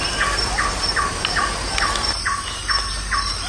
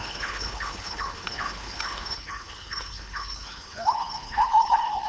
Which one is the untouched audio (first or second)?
first